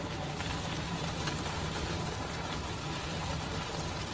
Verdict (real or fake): fake